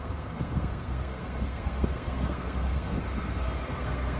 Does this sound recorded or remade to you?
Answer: remade